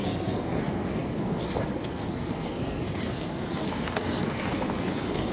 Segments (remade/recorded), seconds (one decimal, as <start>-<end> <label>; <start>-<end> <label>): 0.0-5.3 remade